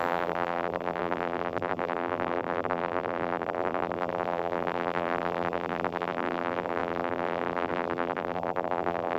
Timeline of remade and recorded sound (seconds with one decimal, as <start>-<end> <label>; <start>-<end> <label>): 0.0-9.2 remade